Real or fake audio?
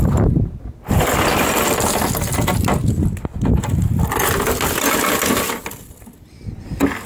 real